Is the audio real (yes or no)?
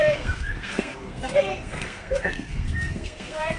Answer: no